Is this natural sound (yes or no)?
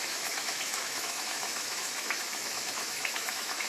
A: no